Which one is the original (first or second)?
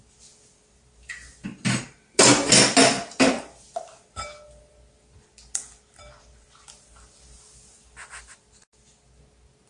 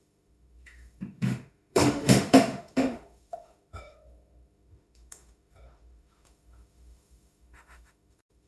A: first